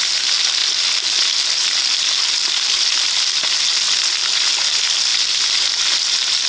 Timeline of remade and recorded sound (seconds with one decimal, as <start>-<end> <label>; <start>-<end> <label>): 0.0-6.5 recorded